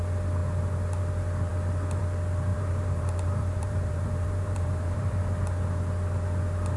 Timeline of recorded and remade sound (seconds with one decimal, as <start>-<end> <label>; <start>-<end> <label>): 0.0-2.5 recorded; 2.5-5.2 remade; 5.2-6.8 recorded

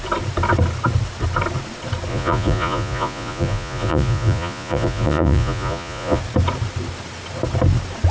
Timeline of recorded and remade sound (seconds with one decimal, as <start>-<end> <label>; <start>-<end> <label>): 0.0-2.1 recorded; 2.1-6.2 remade; 6.2-8.1 recorded

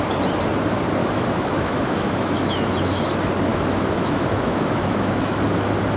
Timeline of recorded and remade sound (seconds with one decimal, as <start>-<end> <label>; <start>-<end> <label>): 0.0-1.0 recorded; 1.0-3.1 remade; 3.1-3.5 recorded; 3.5-5.4 remade; 5.4-6.0 recorded

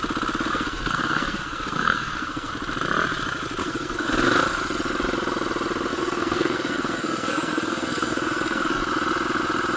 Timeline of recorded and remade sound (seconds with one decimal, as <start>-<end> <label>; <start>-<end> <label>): 0.0-0.5 recorded; 0.5-2.5 remade; 2.5-3.6 recorded; 3.6-4.1 remade; 4.1-5.9 recorded; 5.9-8.8 remade; 8.8-9.8 recorded

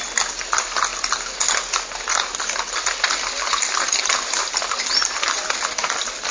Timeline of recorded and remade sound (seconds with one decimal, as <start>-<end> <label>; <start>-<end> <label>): 0.0-6.3 recorded

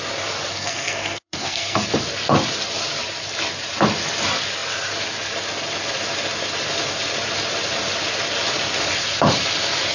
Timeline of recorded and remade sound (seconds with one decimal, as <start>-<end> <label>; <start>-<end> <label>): 0.0-0.5 recorded; 0.5-1.9 remade; 1.9-9.9 recorded

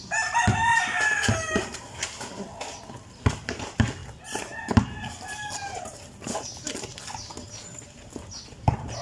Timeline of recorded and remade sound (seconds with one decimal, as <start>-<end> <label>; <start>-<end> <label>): 0.0-9.0 recorded